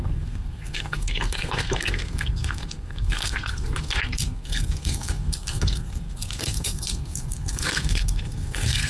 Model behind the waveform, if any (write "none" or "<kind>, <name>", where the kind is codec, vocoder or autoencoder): codec, SNAC